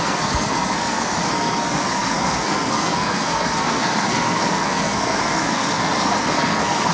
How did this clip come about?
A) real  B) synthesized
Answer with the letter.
B